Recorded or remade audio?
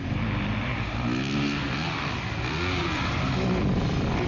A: recorded